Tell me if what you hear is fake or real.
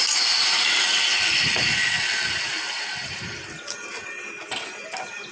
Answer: real